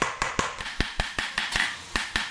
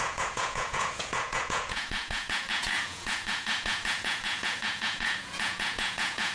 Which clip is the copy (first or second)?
second